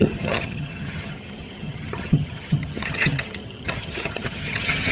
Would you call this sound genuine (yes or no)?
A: no